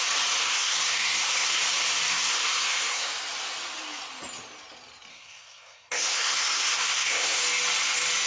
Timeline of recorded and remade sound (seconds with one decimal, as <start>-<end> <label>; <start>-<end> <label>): 0.0-0.4 recorded; 0.4-1.6 remade; 1.6-2.1 recorded; 2.1-3.1 remade; 3.1-5.1 recorded; 5.1-7.4 remade; 7.4-8.3 recorded

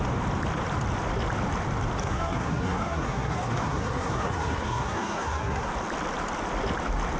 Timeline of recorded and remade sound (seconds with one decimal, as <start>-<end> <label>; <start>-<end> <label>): 0.0-2.0 recorded; 2.0-5.7 remade; 5.7-7.2 recorded

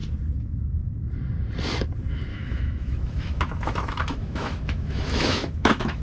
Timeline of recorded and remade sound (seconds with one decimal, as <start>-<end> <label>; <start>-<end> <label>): 0.0-2.3 recorded; 2.3-6.0 remade

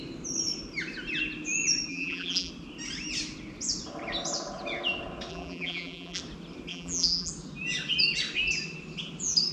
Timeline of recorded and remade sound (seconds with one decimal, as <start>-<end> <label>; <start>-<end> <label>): 0.0-1.9 recorded; 1.9-2.5 remade; 2.5-5.3 recorded; 5.3-6.2 remade; 6.2-6.7 recorded; 6.7-7.3 remade; 7.3-9.5 recorded

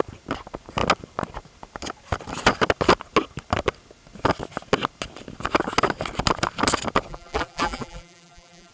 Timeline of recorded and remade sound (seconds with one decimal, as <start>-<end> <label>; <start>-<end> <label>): 0.0-7.1 recorded; 7.1-8.7 remade

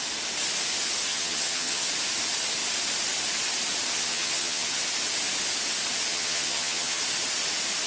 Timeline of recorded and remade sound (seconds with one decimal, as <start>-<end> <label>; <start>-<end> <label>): 0.0-1.1 recorded; 1.1-1.9 remade; 1.9-3.9 recorded; 3.9-4.8 remade; 4.8-6.1 recorded; 6.1-7.0 remade; 7.0-7.9 recorded